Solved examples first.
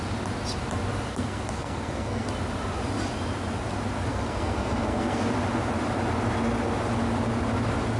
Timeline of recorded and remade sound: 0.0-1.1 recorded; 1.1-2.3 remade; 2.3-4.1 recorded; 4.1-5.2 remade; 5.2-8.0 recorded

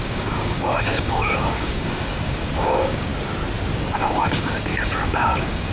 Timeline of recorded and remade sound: 0.0-3.1 remade; 3.1-3.7 recorded; 3.7-5.7 remade